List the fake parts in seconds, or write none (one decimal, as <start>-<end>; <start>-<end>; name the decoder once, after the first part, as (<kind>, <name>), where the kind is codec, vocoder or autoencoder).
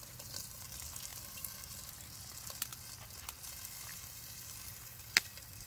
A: none